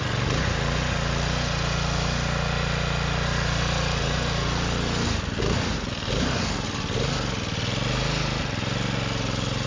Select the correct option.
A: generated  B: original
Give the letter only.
B